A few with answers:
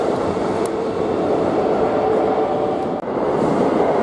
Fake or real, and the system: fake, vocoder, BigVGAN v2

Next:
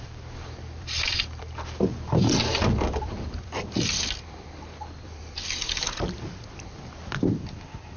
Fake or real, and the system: fake, vocoder, BigVGAN v2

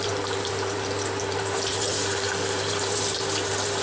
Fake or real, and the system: fake, vocoder, BigVGAN v2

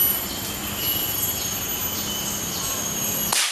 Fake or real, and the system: real